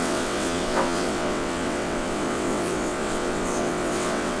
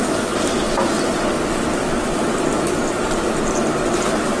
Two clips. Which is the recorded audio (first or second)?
second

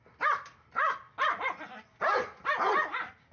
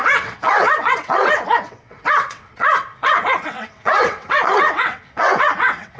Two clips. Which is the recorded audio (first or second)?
first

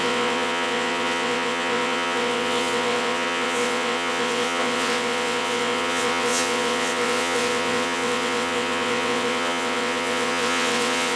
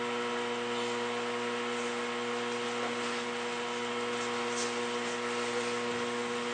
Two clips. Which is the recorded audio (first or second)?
second